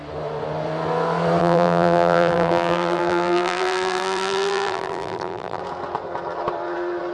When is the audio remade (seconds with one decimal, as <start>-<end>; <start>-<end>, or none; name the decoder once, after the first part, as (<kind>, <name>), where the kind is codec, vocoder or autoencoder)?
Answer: 1.4-5.6 (vocoder, BigVGAN v2)